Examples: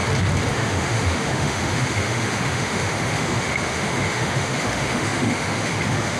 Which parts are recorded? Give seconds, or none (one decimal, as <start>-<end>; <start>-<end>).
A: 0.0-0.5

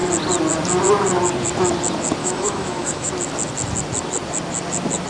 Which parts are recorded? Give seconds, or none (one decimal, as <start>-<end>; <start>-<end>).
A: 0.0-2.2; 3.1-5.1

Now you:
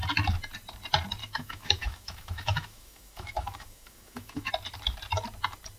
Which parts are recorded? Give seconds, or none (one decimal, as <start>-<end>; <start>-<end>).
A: 0.0-1.2; 4.5-5.8

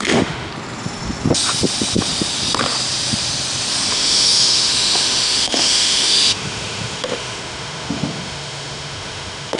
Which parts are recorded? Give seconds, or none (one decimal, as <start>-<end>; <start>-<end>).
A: 0.5-3.9

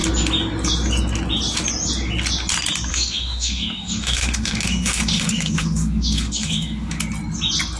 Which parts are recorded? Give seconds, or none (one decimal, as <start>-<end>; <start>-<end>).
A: 0.0-2.9; 7.0-7.8

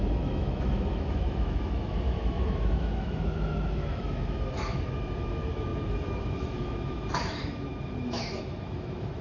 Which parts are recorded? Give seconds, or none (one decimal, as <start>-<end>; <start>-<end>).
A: none